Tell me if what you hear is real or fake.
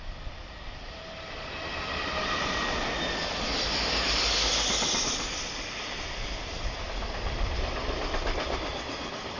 real